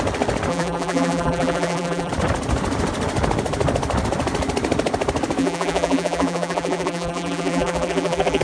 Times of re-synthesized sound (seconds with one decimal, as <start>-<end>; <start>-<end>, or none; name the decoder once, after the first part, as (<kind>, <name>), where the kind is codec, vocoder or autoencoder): 0.5-2.1 (vocoder, BigVGAN v2); 5.4-8.4